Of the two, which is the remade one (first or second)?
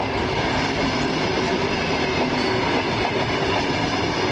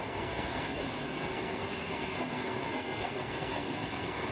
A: second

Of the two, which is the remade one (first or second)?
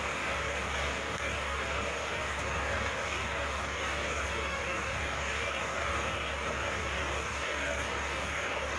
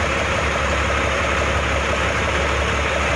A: first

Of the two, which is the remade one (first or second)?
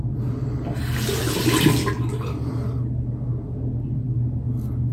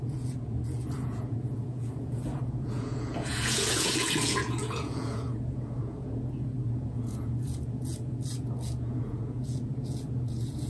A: second